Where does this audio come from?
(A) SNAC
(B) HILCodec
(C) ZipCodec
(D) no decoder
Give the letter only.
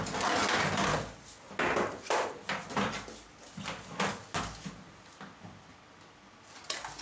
D